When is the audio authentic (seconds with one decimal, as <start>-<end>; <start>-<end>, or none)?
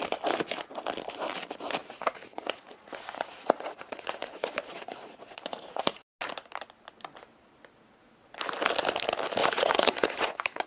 0.0-1.8; 6.1-9.4